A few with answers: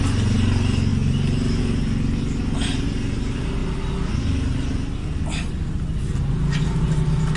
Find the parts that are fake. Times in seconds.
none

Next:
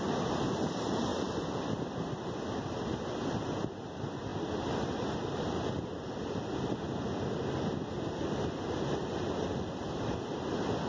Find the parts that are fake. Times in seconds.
none

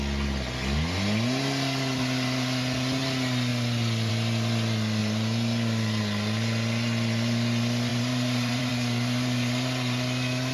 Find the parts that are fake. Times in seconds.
7.9-8.7 (vocoder, BigVGAN v2)

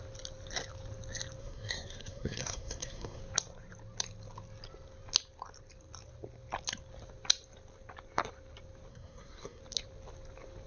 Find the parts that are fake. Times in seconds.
1.4-3.2 (codec, SNAC); 8.9-9.6

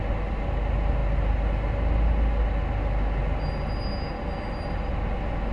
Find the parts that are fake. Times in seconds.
none

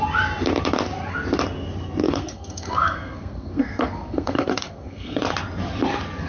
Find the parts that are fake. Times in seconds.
2.0-5.2 (codec, SNAC)

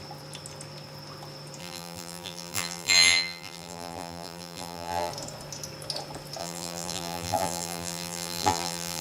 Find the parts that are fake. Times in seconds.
1.6-5.1 (vocoder, BigVGAN v2); 6.4-9.0

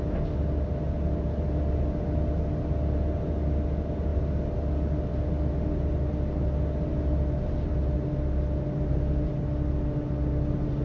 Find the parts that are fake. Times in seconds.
none